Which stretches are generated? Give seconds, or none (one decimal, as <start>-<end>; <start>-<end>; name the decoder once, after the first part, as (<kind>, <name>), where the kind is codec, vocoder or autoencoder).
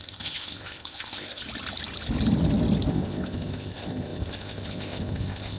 0.0-1.4 (codec, ZipCodec); 2.9-5.6